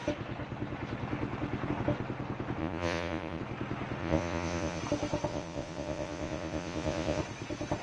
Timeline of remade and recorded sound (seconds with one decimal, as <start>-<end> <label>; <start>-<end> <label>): 0.0-2.6 recorded; 2.6-3.4 remade; 3.4-4.0 recorded; 4.0-4.8 remade; 4.8-5.3 recorded; 5.3-7.2 remade; 7.2-7.8 recorded